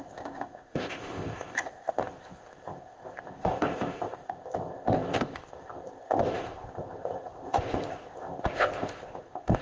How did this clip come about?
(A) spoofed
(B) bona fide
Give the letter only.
A